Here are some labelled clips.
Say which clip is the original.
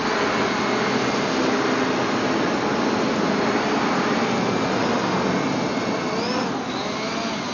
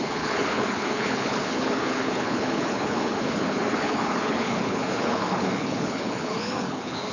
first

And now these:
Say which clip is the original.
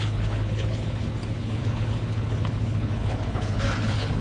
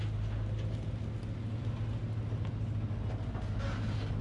second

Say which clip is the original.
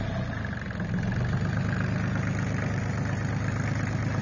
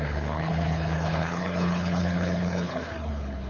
first